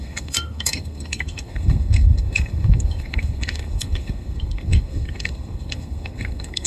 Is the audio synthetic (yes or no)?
yes